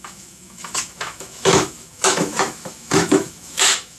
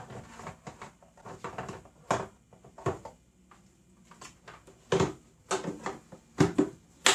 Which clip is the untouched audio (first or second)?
second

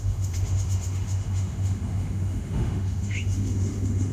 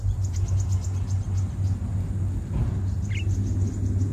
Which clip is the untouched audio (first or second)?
second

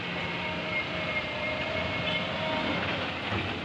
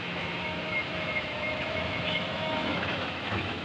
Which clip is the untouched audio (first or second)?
first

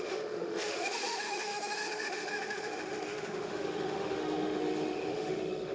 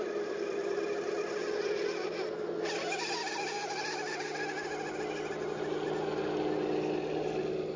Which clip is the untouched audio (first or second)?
second